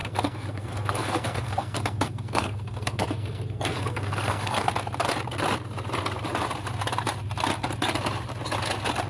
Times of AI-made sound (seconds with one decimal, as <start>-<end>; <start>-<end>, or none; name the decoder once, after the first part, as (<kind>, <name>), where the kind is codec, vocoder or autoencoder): 0.0-4.7 (codec, SNAC)